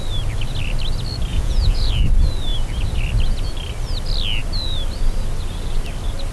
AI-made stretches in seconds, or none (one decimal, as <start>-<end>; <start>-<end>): 1.3-1.9